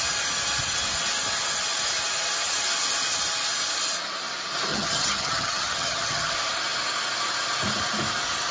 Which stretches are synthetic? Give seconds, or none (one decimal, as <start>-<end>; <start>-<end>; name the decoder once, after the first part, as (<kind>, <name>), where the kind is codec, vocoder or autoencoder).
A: 4.7-6.3 (vocoder, HiFi-GAN)